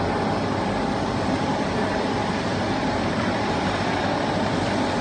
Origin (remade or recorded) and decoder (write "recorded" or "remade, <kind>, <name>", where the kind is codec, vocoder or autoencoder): remade, vocoder, BigVGAN v2